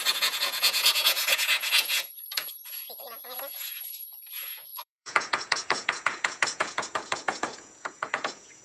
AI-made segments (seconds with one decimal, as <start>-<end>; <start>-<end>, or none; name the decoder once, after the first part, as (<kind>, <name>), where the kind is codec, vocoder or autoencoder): 0.0-8.6 (vocoder, Vocos)